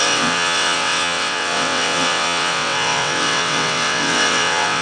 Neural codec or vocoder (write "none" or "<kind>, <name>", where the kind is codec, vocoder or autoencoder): vocoder, WaveNeXt